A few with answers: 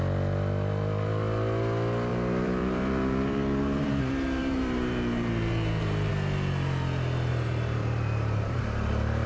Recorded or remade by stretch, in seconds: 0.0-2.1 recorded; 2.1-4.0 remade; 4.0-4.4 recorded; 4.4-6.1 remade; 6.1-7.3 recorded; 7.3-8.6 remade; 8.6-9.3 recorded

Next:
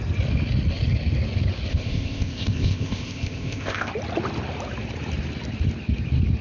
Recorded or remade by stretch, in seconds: 0.0-1.7 recorded; 1.7-3.9 remade; 3.9-6.4 recorded

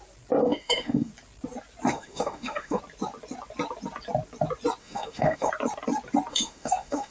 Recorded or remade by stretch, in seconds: 0.0-0.4 recorded; 0.4-1.1 remade; 1.1-1.9 recorded; 1.9-2.8 remade; 2.8-4.8 recorded; 4.8-5.5 remade; 5.5-6.3 recorded; 6.3-7.1 remade

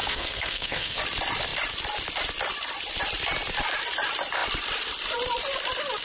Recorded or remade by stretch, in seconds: 0.0-1.0 remade; 1.0-6.0 recorded